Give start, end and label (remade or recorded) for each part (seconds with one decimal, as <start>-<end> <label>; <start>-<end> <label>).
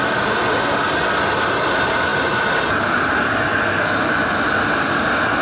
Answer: 0.0-5.4 recorded